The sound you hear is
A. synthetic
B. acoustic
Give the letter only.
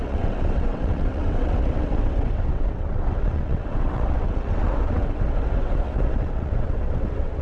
A